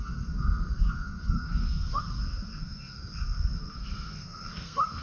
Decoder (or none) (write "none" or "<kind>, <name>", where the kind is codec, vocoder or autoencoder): codec, SNAC